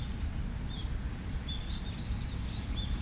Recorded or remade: recorded